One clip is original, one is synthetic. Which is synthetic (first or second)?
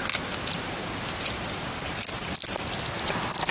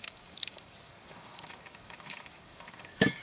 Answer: second